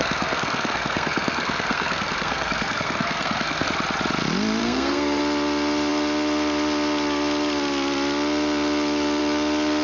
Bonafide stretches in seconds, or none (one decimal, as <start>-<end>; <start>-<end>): 3.7-4.6; 5.2-9.8